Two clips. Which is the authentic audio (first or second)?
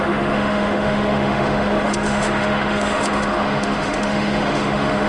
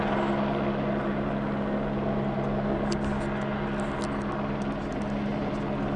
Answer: second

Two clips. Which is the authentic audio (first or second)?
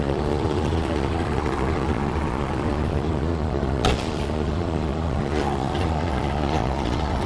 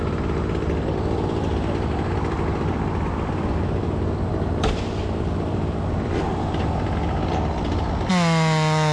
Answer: second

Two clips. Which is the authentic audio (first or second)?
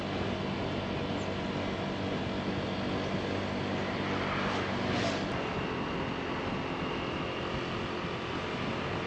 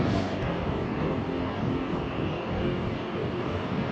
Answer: first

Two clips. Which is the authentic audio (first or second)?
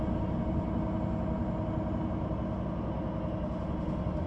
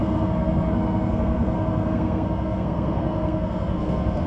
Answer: first